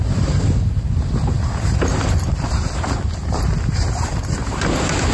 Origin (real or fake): real